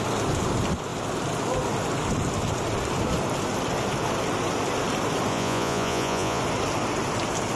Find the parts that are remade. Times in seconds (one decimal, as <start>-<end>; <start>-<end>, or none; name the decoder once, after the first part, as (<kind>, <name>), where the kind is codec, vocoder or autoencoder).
5.3-6.4 (vocoder, Vocos)